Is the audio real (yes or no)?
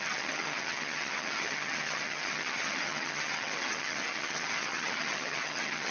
no